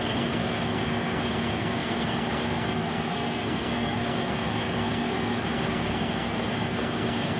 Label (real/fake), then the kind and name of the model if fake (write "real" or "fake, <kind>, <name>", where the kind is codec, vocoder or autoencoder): fake, codec, SNAC